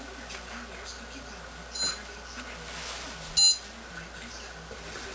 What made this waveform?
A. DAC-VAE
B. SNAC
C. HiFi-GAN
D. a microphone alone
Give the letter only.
D